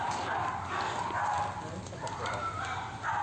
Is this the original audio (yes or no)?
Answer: yes